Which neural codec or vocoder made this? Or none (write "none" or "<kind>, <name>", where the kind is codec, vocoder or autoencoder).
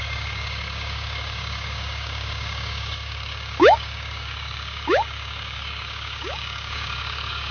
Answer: codec, DAC